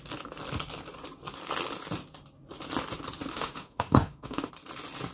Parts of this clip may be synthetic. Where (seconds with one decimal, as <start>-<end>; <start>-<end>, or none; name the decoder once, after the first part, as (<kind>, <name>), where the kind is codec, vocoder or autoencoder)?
3.3-4.5 (autoencoder, DAC-VAE)